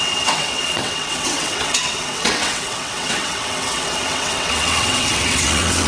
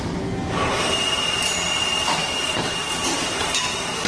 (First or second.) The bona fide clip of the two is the second